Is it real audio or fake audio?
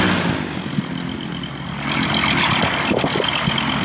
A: real